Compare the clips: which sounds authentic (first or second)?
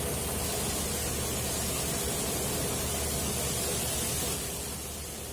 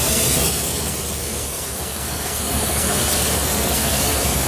first